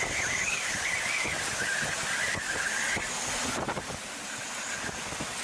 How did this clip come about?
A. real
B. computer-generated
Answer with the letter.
A